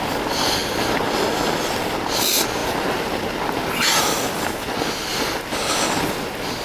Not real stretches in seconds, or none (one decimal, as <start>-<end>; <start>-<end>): none

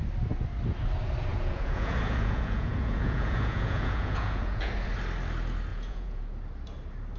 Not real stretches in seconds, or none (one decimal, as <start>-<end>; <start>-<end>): 1.3-4.7; 5.7-6.2

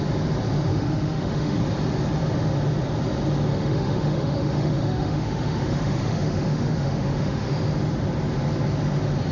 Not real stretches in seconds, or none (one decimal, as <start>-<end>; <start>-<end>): 0.7-1.6; 3.5-7.5

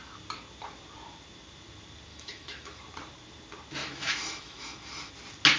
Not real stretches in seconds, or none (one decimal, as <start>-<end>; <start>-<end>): 2.1-2.8; 3.8-5.1

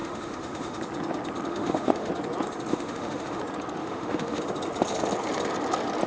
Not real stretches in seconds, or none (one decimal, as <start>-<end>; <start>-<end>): 0.0-0.8; 1.5-2.1; 2.7-3.4; 3.8-4.4

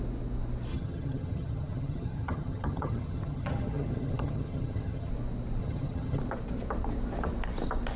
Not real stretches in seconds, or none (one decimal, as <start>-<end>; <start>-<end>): 0.7-5.1; 5.6-6.2